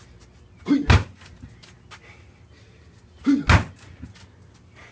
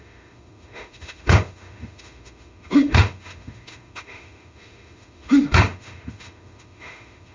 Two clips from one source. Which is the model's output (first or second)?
second